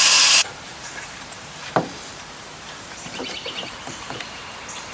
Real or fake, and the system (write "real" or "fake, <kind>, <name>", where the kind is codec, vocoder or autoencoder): fake, vocoder, BigVGAN v2